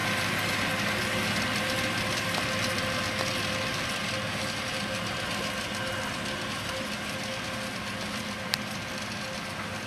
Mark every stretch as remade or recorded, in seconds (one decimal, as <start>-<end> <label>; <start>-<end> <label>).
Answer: 0.0-9.9 recorded